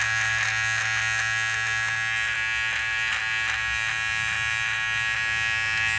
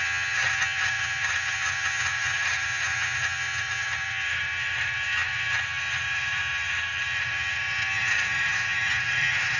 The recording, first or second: first